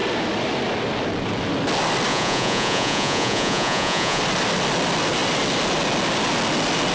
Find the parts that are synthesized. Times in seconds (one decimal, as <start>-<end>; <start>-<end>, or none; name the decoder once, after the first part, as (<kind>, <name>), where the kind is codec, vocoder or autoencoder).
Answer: 2.1-4.2 (vocoder, Vocos)